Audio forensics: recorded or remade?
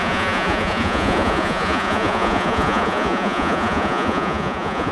remade